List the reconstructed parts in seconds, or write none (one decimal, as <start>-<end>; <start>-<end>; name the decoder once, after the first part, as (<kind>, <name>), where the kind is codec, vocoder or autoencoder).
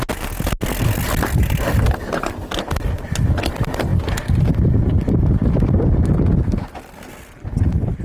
none